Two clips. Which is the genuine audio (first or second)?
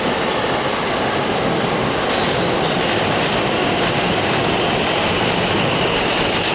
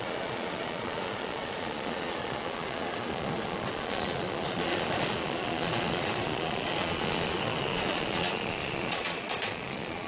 first